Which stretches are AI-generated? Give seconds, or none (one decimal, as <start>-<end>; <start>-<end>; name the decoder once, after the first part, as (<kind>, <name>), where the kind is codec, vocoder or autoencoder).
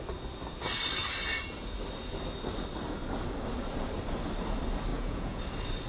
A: 4.9-5.4 (vocoder, Vocos)